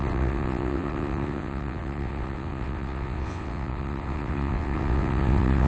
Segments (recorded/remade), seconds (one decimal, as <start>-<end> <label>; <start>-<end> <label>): 0.0-5.7 remade